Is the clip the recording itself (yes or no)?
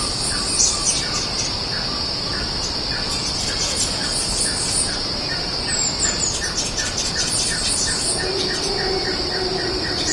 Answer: no